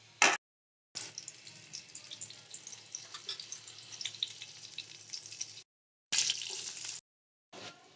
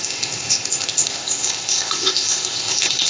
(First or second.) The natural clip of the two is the first